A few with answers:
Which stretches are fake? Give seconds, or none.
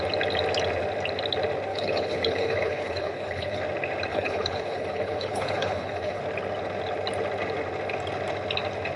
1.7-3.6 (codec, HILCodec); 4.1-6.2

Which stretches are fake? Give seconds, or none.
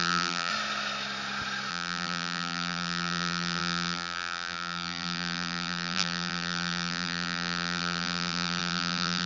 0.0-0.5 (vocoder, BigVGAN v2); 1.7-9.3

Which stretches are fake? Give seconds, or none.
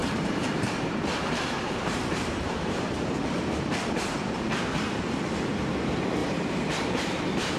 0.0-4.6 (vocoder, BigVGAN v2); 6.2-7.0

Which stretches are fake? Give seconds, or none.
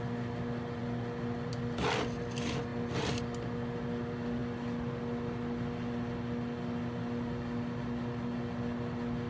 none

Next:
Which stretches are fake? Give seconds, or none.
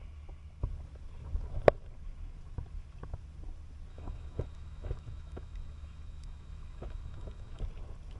3.9-7.6 (autoencoder, DAC-VAE)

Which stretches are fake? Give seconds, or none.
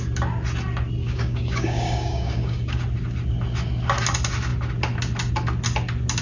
1.0-2.8 (codec, DAC)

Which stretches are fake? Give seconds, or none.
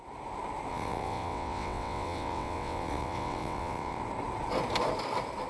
0.7-4.0 (vocoder, WaveNeXt)